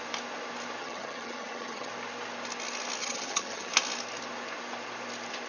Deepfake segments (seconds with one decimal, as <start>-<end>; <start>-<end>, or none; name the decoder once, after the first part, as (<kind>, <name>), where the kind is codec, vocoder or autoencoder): 0.8-1.9 (vocoder, HiFi-GAN); 3.0-3.7